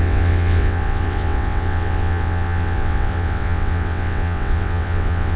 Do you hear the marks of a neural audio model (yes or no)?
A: yes